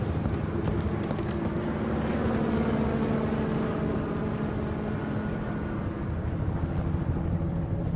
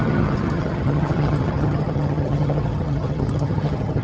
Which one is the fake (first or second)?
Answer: second